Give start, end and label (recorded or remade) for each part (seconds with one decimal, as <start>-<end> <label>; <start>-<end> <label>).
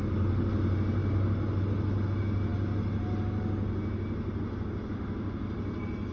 0.0-6.1 recorded